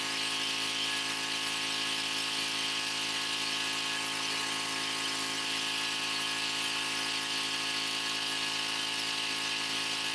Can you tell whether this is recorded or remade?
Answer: recorded